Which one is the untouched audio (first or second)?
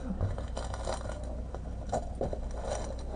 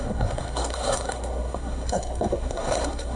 first